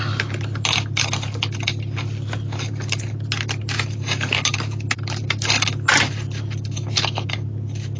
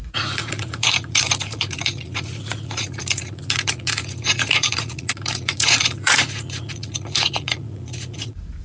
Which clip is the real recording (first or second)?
first